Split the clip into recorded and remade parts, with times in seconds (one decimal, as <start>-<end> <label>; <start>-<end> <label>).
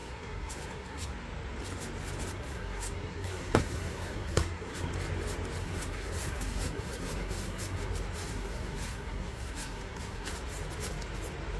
0.0-1.1 remade; 1.1-2.3 recorded; 2.3-4.9 remade; 4.9-5.6 recorded; 5.6-7.9 remade; 7.9-8.3 recorded; 8.3-10.3 remade; 10.3-11.6 recorded